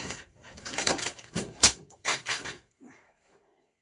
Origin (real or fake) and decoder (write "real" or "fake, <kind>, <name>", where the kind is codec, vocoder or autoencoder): fake, codec, SNAC